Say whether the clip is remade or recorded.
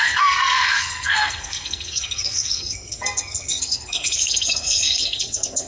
remade